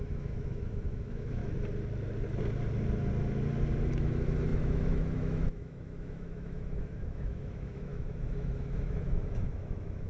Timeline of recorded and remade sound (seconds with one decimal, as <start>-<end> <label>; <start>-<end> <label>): 0.0-1.4 remade; 1.4-3.9 recorded; 3.9-10.1 remade